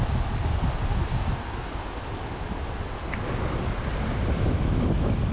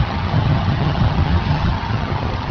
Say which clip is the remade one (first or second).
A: second